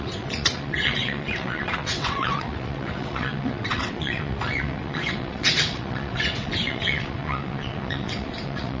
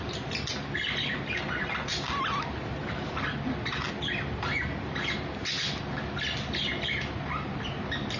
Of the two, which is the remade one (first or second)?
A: first